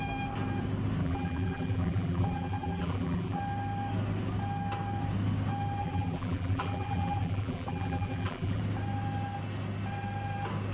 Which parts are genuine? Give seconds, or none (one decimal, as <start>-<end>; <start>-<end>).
0.0-1.0; 3.4-5.8; 8.6-10.7